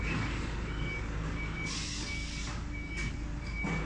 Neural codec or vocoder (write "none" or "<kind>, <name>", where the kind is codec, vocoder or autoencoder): codec, DAC